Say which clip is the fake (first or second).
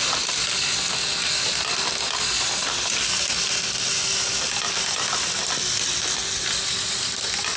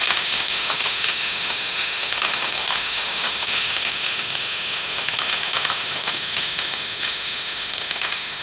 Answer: second